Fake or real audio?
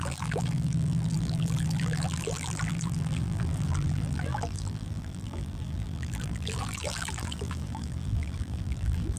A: fake